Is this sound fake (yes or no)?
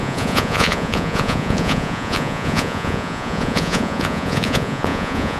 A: yes